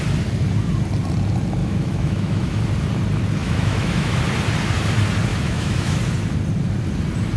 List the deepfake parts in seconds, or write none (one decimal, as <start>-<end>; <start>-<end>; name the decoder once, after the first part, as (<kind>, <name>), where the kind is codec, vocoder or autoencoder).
1.6-2.6 (autoencoder, DAC-VAE); 3.4-4.2; 5.3-6.0

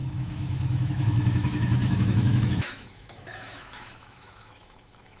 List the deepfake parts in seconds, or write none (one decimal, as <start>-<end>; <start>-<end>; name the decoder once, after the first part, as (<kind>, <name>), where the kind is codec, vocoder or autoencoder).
0.0-5.2 (autoencoder, DAC-VAE)

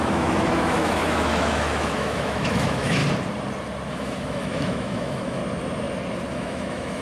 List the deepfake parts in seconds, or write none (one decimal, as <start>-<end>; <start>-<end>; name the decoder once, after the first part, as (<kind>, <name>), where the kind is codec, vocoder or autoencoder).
0.0-3.0 (autoencoder, DAC-VAE); 3.9-5.4; 6.3-7.0

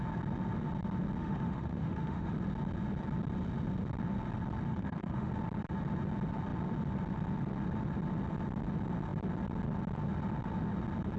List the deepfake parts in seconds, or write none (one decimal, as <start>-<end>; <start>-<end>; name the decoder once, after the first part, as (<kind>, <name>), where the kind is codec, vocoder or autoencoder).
1.2-2.3 (autoencoder, DAC-VAE); 4.7-5.3

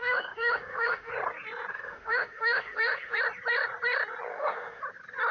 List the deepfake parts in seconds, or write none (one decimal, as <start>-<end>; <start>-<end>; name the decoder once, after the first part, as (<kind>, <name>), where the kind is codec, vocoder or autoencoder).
0.0-1.1 (autoencoder, DAC-VAE); 1.7-3.2; 4.3-4.8

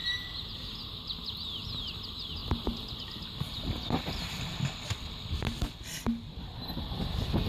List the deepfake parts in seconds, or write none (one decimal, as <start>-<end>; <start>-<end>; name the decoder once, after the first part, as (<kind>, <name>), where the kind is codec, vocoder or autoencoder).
none

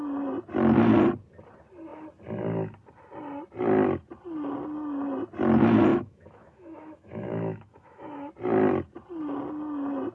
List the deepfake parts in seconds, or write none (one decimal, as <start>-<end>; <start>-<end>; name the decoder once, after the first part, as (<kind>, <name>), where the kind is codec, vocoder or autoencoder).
5.9-8.3 (autoencoder, DAC-VAE)

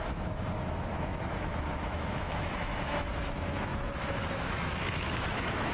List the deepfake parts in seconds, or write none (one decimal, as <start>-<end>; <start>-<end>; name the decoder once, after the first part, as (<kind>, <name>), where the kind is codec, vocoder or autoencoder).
0.0-5.7 (autoencoder, DAC-VAE)